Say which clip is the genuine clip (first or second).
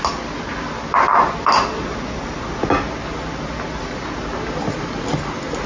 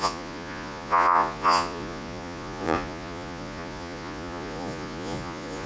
first